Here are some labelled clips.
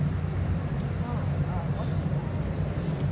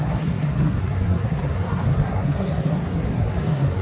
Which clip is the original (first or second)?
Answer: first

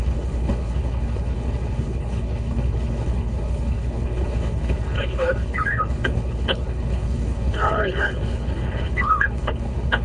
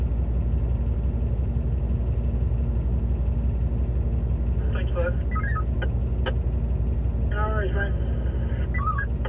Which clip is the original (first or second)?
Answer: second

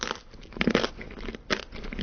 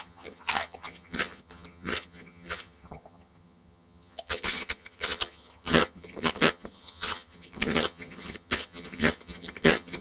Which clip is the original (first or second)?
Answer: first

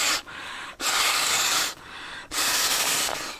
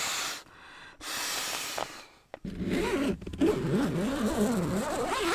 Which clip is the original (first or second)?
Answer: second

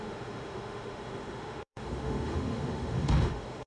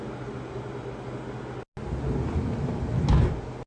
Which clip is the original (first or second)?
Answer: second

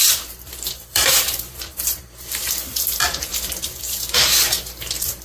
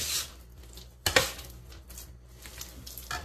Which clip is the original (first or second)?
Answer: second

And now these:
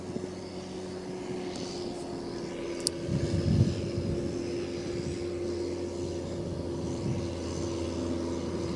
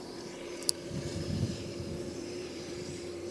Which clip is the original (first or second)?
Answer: first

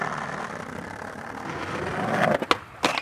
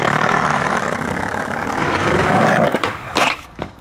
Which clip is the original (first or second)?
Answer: first